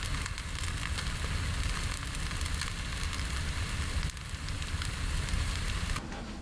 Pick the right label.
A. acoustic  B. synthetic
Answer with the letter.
A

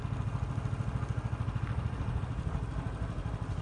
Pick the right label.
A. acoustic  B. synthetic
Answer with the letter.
A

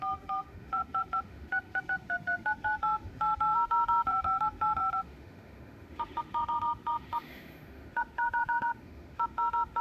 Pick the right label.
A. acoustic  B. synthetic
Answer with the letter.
B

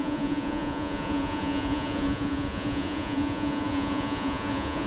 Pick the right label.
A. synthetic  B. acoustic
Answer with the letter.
A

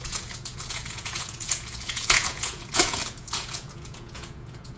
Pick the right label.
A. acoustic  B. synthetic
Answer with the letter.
B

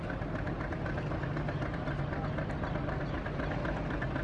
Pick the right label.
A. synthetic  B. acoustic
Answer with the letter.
B